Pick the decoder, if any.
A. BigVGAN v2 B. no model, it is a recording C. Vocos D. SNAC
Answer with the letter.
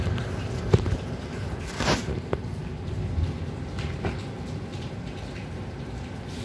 B